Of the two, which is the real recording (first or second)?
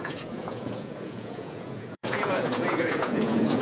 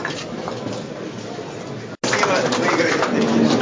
second